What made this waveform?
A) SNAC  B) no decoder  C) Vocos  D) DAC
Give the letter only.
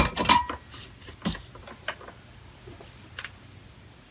B